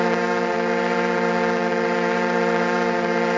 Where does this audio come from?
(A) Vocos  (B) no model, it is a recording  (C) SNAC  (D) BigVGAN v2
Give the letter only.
D